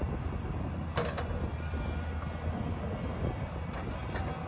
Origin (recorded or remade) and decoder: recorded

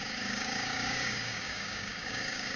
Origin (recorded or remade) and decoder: remade, codec, DAC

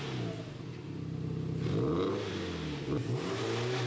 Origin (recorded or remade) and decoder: recorded